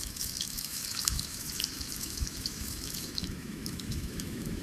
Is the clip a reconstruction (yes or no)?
yes